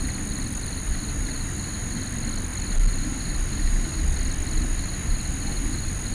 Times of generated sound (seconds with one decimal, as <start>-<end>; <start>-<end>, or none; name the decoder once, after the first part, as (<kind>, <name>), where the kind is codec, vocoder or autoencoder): none